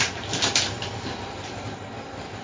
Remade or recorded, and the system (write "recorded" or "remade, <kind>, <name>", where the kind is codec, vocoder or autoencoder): recorded